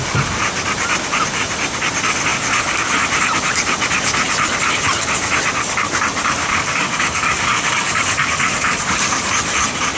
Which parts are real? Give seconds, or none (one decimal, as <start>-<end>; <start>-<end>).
0.0-6.5; 9.3-10.0